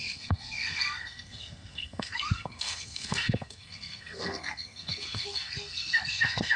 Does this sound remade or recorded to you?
remade